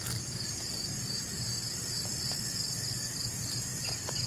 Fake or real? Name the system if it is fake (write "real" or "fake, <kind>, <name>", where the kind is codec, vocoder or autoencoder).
real